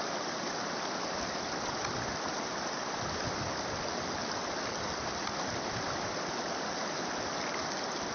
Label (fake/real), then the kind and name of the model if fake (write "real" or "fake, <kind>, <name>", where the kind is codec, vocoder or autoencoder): real